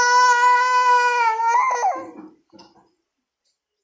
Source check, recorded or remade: recorded